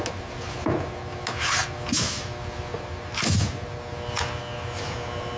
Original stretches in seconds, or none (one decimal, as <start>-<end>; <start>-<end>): 0.0-5.4